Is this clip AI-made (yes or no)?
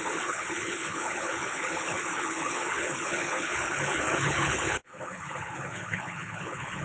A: yes